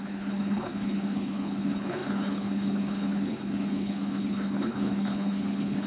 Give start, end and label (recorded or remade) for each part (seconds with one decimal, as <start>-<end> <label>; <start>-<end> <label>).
0.0-5.9 remade